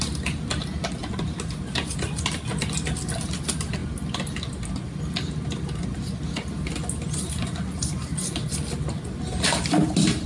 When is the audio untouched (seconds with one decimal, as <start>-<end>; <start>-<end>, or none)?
0.0-10.3